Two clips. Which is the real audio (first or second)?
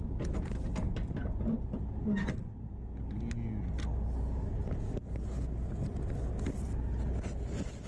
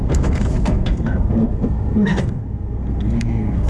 first